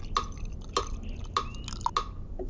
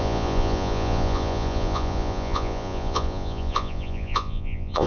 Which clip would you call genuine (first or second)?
first